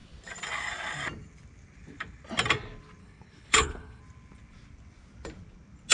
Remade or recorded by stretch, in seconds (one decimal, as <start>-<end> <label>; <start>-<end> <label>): 0.0-3.0 recorded; 3.0-4.0 remade; 4.0-5.9 recorded